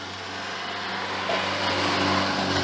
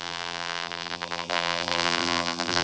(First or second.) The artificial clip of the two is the second